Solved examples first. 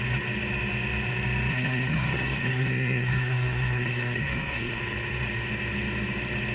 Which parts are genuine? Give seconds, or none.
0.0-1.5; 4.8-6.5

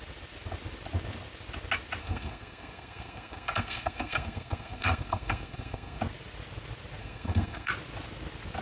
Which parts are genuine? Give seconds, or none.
0.0-2.0; 6.0-7.0; 7.7-8.6

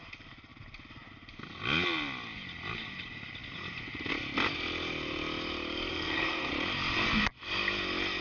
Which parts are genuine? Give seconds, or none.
0.0-5.9; 6.5-8.2

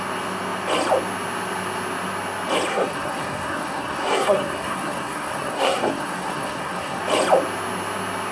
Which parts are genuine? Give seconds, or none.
0.0-2.7; 7.0-8.3

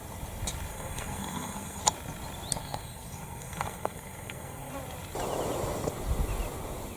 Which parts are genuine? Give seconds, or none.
0.0-0.7; 1.8-2.6; 4.7-7.0